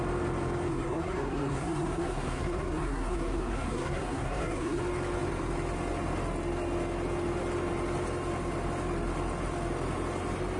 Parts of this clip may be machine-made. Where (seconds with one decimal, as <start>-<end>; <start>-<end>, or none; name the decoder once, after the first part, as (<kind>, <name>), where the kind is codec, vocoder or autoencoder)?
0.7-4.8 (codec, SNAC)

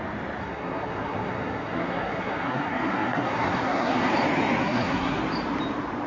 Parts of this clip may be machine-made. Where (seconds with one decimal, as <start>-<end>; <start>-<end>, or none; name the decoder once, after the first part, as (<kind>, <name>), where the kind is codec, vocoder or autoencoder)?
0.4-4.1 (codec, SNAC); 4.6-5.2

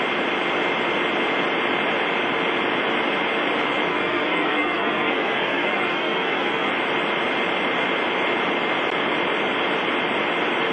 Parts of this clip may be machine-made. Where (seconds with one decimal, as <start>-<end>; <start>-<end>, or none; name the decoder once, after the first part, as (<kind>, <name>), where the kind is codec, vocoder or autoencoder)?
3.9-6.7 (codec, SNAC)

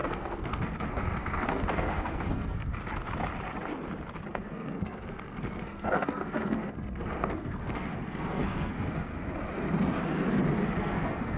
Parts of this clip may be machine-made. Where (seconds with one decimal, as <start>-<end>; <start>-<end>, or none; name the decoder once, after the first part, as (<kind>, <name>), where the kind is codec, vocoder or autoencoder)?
0.0-2.7 (codec, SNAC); 4.3-9.1; 10.8-11.4

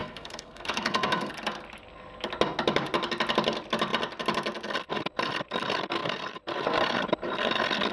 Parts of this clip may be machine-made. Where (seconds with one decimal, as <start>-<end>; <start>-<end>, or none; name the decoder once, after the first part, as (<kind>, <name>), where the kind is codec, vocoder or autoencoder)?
0.0-1.3 (codec, SNAC)

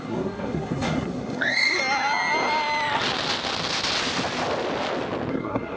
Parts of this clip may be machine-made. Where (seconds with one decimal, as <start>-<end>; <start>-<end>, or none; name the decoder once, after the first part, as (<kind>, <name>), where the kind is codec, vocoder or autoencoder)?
0.0-1.8 (codec, SNAC); 5.3-5.8

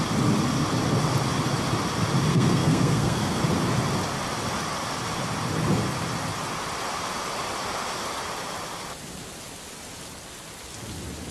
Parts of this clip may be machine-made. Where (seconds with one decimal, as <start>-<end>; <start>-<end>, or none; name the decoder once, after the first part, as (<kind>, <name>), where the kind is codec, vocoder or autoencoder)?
2.3-3.4 (codec, SNAC)

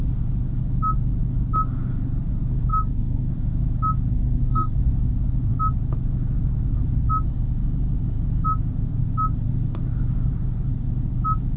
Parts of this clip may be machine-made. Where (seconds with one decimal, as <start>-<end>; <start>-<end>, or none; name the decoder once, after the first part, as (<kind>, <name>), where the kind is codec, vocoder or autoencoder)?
2.7-3.3 (codec, SNAC); 4.1-4.8